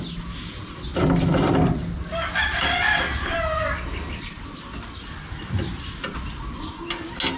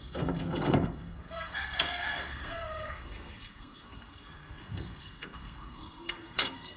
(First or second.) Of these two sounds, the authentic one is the first